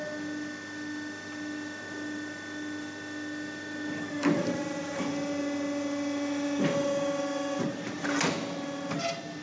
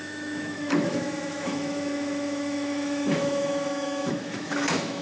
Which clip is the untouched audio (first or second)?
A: first